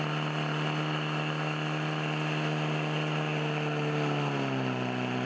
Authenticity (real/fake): real